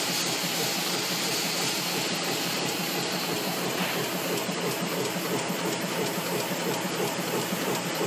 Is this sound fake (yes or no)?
yes